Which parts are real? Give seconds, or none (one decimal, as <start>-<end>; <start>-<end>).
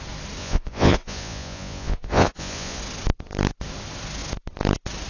0.0-0.4; 2.8-5.1